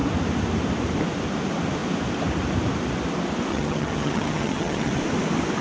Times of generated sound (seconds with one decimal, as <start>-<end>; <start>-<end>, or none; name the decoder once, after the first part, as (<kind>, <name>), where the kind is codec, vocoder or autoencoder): 3.5-5.0 (vocoder, HiFi-GAN)